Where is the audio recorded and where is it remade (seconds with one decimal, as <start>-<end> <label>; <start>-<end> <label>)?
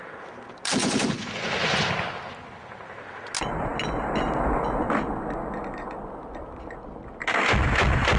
0.0-0.8 recorded; 0.8-1.8 remade; 1.8-8.2 recorded